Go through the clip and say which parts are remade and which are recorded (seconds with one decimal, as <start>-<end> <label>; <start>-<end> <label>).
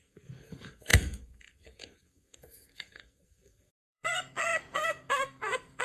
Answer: 0.0-5.8 remade